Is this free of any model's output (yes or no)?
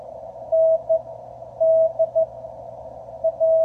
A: yes